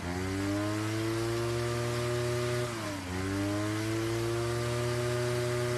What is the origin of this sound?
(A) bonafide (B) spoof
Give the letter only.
A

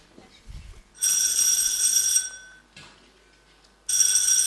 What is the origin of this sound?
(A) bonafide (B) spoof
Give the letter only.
A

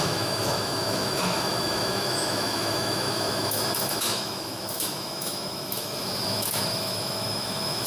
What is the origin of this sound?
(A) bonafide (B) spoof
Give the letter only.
B